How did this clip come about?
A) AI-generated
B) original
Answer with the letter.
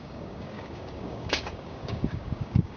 A